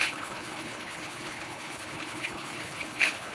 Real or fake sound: fake